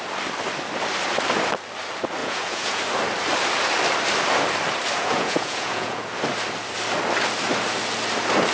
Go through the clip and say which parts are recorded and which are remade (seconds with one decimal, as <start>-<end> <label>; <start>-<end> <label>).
0.0-2.2 recorded; 2.2-2.8 remade; 2.8-5.0 recorded; 5.0-6.0 remade; 6.0-8.5 recorded